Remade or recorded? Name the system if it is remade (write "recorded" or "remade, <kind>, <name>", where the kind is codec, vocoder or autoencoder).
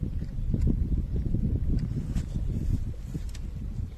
recorded